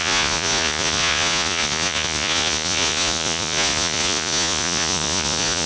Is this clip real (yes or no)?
no